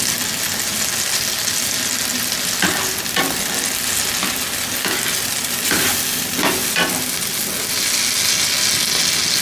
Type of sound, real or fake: real